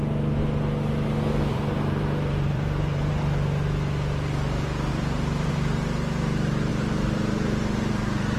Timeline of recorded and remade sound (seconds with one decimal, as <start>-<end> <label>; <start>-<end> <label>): 0.0-1.5 recorded; 1.5-3.1 remade; 3.1-4.9 recorded; 4.9-5.5 remade; 5.5-6.7 recorded; 6.7-8.4 remade